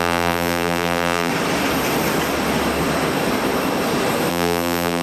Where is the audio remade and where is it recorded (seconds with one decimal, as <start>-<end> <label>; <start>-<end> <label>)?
0.0-1.3 remade; 1.3-4.3 recorded; 4.3-5.0 remade